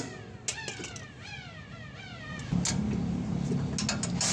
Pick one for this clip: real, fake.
real